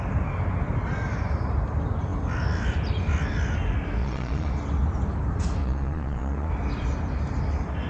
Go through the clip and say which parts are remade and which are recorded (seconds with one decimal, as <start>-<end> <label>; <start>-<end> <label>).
0.0-4.0 recorded; 4.0-4.5 remade; 4.5-5.6 recorded; 5.6-6.5 remade; 6.5-7.9 recorded